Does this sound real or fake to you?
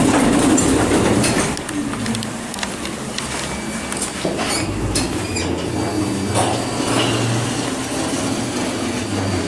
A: real